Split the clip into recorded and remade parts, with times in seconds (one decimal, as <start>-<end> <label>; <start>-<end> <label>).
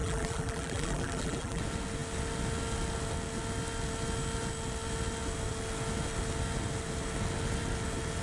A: 0.0-1.6 remade; 1.6-8.2 recorded